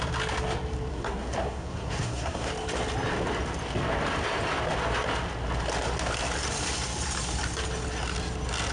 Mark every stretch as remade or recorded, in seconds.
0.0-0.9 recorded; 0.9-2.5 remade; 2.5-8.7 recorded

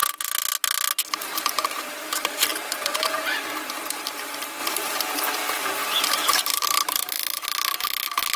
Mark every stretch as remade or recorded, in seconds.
0.0-1.1 recorded; 1.1-2.5 remade; 2.5-3.1 recorded; 3.1-8.4 remade

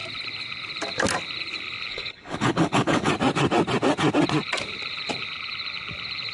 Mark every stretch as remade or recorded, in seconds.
0.0-1.9 recorded; 1.9-3.1 remade; 3.1-6.3 recorded

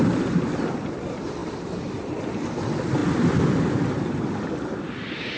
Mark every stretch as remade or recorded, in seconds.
0.0-1.4 recorded; 1.4-2.3 remade; 2.3-3.0 recorded; 3.0-5.4 remade